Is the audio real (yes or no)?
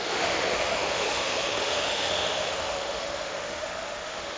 no